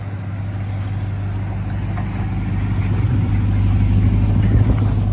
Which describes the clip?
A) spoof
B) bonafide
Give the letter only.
B